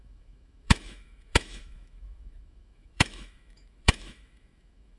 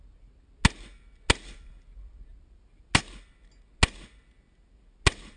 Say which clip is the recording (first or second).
second